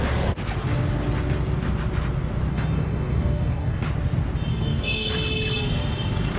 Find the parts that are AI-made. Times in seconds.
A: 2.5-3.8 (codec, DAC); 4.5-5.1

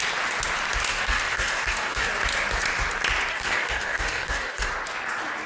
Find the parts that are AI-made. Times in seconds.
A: 0.9-2.1 (codec, DAC); 3.3-4.7

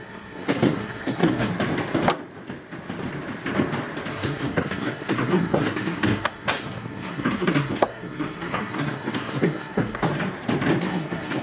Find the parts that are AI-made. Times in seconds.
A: 0.0-1.5 (codec, SNAC); 4.1-10.1; 10.8-11.4

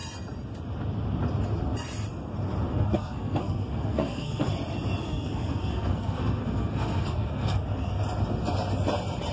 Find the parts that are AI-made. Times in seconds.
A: 2.7-4.5 (codec, SNAC); 5.0-7.9

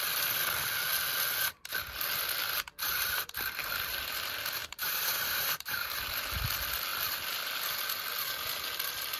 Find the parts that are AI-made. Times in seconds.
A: 4.6-6.0 (vocoder, BigVGAN v2)

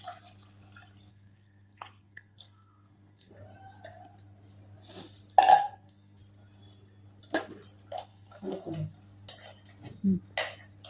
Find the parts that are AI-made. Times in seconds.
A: 1.1-3.3 (codec, SNAC); 5.5-6.2; 8.1-8.7

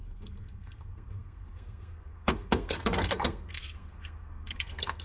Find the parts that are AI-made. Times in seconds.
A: 0.0-5.0 (codec, SNAC)

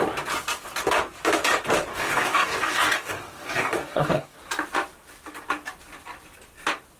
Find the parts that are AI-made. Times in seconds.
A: 1.9-4.4 (codec, DAC)